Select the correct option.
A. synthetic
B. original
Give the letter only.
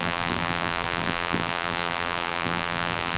A